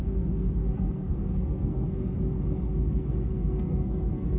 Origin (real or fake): fake